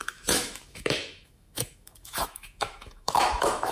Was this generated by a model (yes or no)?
yes